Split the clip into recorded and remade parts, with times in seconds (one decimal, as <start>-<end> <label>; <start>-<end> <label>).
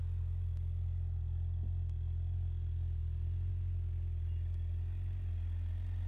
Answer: 0.0-6.1 recorded